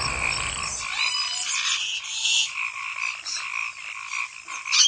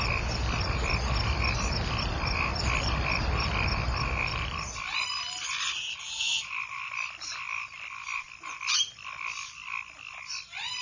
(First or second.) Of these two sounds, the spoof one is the second